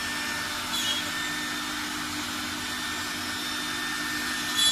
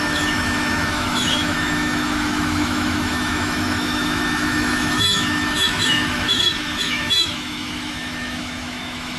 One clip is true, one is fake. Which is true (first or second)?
first